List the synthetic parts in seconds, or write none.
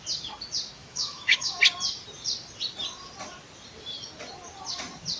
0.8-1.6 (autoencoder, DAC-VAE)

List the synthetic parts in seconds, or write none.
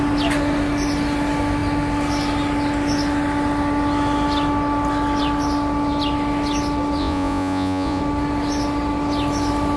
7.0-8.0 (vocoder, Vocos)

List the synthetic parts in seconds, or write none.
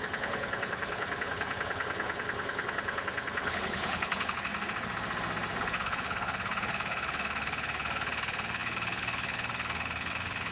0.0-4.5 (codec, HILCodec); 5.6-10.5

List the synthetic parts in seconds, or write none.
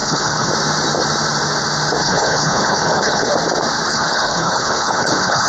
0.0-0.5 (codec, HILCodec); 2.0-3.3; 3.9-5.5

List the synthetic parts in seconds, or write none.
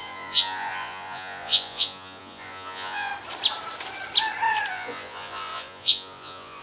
0.0-3.1 (vocoder, Vocos); 4.7-6.6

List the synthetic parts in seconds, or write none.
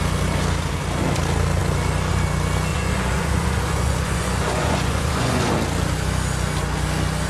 2.7-5.5 (vocoder, Vocos)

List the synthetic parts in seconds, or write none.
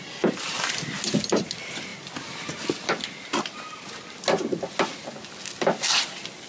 0.0-1.9 (vocoder, BigVGAN v2); 5.8-6.5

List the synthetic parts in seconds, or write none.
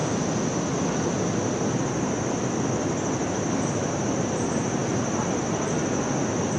none